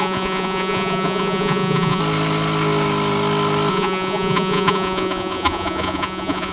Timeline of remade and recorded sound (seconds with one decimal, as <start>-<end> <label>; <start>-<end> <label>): 0.0-2.0 remade; 2.0-3.7 recorded; 3.7-6.5 remade